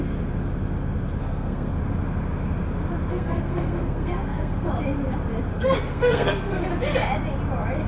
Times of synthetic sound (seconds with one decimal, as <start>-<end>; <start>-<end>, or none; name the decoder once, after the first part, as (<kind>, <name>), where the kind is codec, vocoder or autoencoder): 1.2-1.7 (codec, SNAC); 3.1-4.7; 5.5-6.6